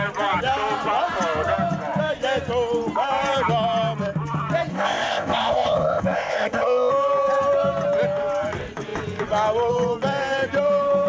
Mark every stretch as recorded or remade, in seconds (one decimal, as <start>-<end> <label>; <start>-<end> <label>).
0.0-4.7 recorded; 4.7-6.9 remade; 6.9-11.1 recorded